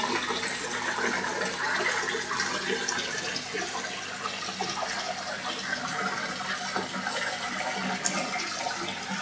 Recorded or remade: recorded